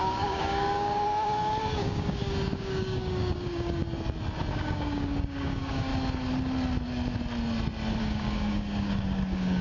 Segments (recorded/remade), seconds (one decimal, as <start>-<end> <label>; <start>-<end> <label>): 0.0-3.8 remade; 3.8-4.5 recorded; 4.5-5.9 remade; 5.9-8.0 recorded; 8.0-9.6 remade